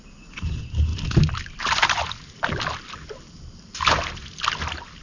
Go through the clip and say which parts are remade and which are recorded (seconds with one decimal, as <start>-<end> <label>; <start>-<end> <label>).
0.0-0.9 recorded; 0.9-3.9 remade; 3.9-5.0 recorded

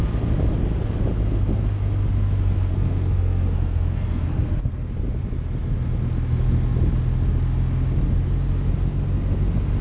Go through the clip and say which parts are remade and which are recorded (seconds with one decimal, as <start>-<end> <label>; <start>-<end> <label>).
0.0-2.7 recorded; 2.7-4.9 remade; 4.9-9.8 recorded

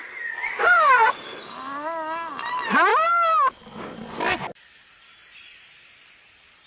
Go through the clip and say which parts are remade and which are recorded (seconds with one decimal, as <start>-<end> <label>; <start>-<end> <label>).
0.0-0.5 recorded; 0.5-1.1 remade; 1.1-6.7 recorded